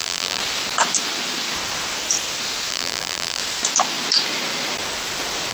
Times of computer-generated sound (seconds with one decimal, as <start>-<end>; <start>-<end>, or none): 0.0-0.4; 2.7-3.4